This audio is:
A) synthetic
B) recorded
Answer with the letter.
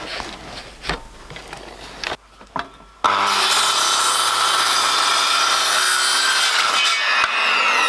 B